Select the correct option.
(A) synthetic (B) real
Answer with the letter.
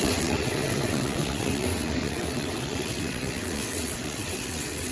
A